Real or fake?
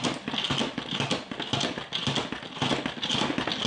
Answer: real